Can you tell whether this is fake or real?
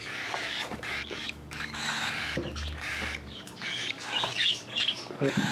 fake